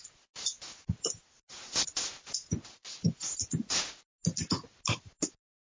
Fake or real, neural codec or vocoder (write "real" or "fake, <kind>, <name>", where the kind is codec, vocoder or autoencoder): real